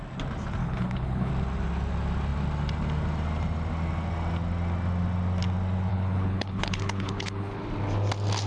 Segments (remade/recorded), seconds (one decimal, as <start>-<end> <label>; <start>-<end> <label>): 0.0-0.6 recorded; 0.6-1.3 remade; 1.3-5.9 recorded; 5.9-7.6 remade; 7.6-8.5 recorded